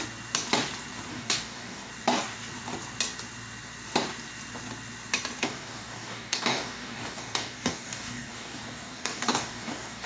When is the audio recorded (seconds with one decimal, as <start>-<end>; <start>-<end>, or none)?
0.0-1.1; 1.9-5.4